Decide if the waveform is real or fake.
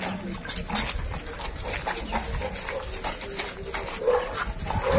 real